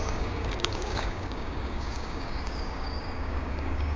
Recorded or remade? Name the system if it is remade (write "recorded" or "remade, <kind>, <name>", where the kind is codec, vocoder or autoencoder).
remade, codec, DAC